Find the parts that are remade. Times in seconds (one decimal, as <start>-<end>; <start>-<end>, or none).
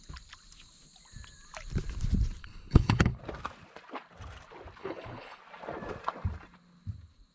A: 2.4-3.2; 4.8-5.4